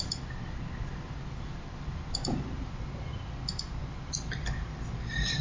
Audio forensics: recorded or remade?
recorded